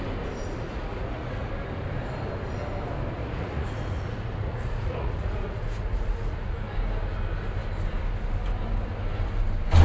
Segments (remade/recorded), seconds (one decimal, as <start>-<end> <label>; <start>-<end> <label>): 0.0-0.4 recorded; 0.4-1.5 remade; 1.5-3.2 recorded; 3.2-6.6 remade; 6.6-9.8 recorded